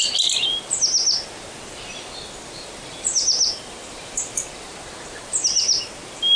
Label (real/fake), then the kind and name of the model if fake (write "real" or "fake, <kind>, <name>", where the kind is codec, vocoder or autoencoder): real